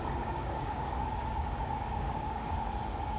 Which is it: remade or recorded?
remade